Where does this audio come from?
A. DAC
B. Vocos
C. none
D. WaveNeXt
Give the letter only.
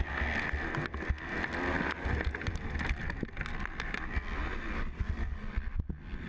C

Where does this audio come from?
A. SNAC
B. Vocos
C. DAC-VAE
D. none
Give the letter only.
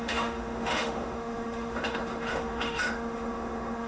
C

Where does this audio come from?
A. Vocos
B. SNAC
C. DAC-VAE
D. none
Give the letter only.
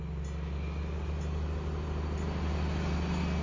D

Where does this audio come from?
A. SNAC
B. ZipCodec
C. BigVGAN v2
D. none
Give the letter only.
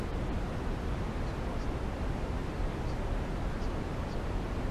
D